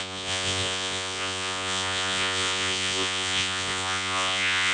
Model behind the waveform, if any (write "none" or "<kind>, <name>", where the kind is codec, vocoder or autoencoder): vocoder, Vocos